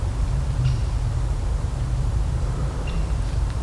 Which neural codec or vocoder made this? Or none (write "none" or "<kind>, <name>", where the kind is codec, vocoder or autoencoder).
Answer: vocoder, BigVGAN v2